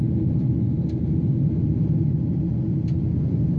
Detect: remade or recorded recorded